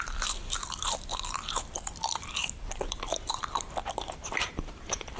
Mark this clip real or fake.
fake